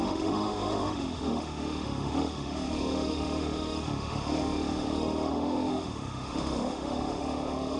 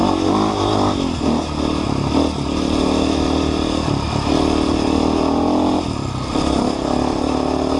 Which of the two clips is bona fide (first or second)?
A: second